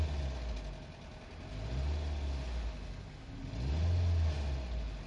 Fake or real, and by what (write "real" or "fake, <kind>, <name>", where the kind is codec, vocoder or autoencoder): real